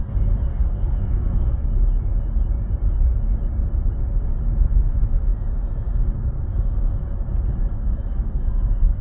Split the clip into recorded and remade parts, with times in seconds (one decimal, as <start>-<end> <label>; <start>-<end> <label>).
0.0-0.5 recorded; 0.5-1.6 remade; 1.6-9.0 recorded